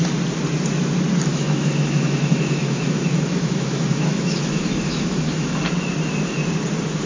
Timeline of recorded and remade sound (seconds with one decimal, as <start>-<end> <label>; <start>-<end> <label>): 0.0-1.3 recorded; 1.3-5.6 remade; 5.6-7.1 recorded